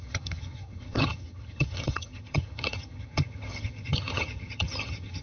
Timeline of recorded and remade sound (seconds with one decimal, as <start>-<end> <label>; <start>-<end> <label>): 0.0-5.2 remade